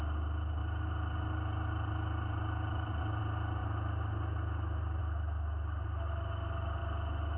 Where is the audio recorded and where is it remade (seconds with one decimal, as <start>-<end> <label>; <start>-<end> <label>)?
0.0-7.4 recorded

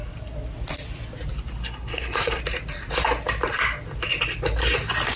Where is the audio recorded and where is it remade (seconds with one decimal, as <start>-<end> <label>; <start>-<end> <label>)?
0.0-1.6 recorded; 1.6-2.4 remade; 2.4-5.2 recorded